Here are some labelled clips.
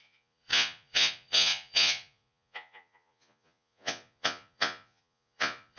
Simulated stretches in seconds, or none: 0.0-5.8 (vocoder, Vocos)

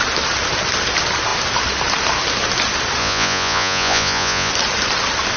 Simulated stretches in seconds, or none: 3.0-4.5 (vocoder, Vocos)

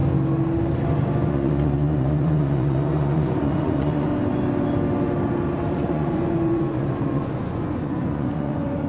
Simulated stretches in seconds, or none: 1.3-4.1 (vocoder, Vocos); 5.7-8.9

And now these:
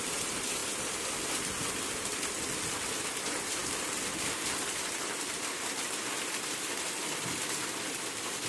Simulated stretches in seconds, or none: none

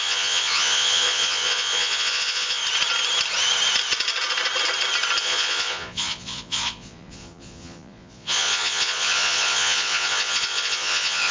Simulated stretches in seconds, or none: 0.0-2.6 (vocoder, Vocos); 5.2-11.3